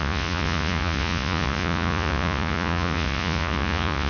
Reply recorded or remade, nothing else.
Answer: remade